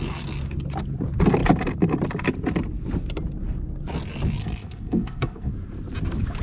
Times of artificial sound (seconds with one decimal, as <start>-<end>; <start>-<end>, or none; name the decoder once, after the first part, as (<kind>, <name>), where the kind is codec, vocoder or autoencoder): 4.4-5.5 (codec, SNAC)